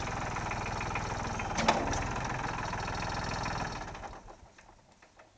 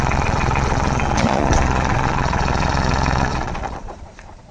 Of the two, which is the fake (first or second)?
second